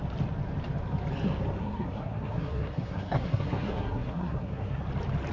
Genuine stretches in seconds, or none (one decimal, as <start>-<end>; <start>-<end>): 0.0-1.6; 4.8-5.3